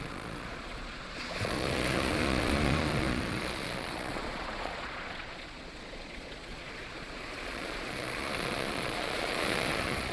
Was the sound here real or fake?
fake